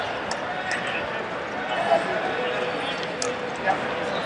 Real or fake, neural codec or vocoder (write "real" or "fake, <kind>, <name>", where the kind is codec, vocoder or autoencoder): real